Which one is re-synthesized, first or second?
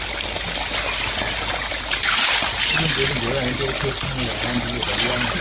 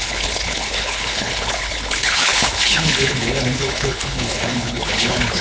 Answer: second